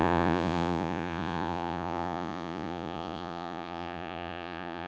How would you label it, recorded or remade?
remade